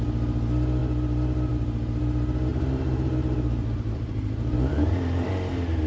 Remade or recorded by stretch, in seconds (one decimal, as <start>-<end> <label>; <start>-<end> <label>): 0.0-2.5 recorded; 2.5-5.3 remade; 5.3-5.9 recorded